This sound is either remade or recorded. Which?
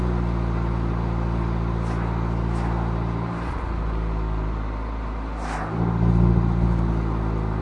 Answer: recorded